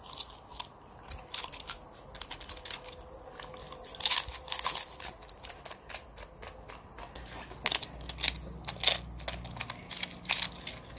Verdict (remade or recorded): recorded